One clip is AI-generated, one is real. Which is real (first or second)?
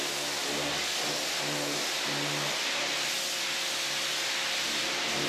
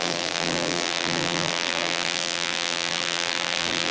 first